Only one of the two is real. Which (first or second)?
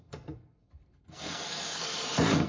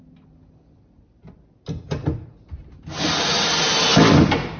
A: second